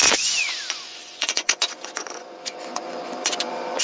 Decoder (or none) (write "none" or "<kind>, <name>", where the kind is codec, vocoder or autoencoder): vocoder, Vocos